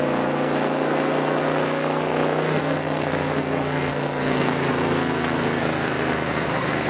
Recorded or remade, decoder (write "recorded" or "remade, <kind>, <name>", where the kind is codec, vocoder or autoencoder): remade, codec, SNAC